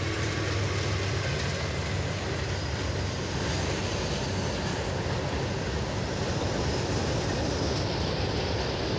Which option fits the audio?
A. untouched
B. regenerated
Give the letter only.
A